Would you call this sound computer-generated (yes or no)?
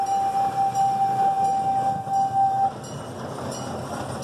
no